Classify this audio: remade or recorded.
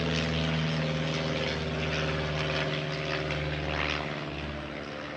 recorded